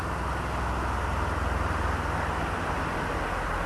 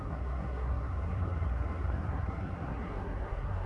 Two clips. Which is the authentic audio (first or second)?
first